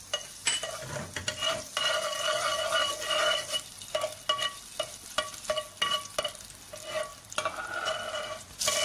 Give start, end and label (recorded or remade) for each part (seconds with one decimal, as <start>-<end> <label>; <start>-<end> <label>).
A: 0.0-0.4 recorded; 0.4-1.9 remade; 1.9-2.8 recorded; 2.8-4.2 remade; 4.2-7.1 recorded; 7.1-8.2 remade; 8.2-8.8 recorded